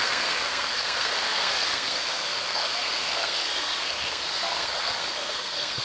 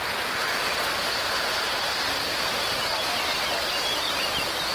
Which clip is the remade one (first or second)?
first